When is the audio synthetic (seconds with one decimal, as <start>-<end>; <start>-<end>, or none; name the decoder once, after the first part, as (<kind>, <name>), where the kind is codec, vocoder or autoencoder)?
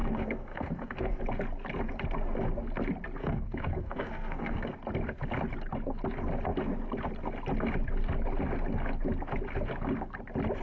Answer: 0.0-1.2 (codec, SNAC); 3.2-4.7